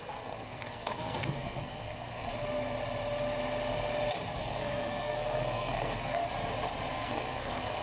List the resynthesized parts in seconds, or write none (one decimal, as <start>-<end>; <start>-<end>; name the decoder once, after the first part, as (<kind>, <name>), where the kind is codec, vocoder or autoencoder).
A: 0.0-2.3 (codec, SNAC); 4.4-6.2; 6.9-7.8